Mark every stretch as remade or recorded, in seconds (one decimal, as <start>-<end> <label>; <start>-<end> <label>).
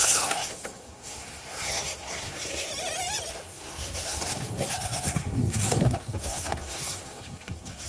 0.0-2.7 remade; 2.7-3.3 recorded; 3.3-7.9 remade